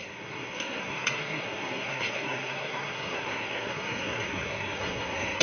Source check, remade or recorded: remade